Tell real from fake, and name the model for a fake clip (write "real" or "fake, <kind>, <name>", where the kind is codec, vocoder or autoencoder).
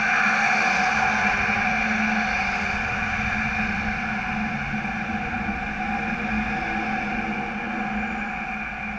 real